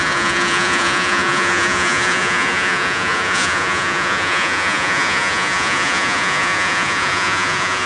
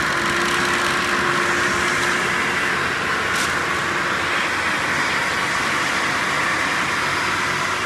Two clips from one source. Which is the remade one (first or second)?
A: first